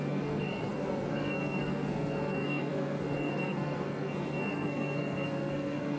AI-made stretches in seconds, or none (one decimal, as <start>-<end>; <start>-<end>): 0.0-6.0